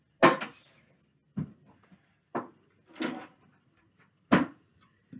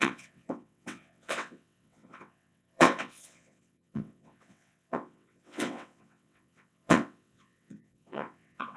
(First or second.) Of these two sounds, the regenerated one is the second